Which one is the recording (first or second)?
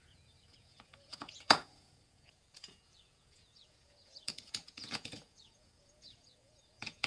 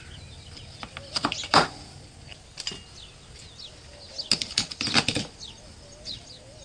second